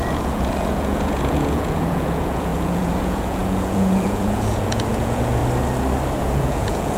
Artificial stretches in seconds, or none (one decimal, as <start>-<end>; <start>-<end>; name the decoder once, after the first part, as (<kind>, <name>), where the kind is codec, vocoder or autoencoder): 0.0-5.4 (vocoder, Vocos); 6.2-7.0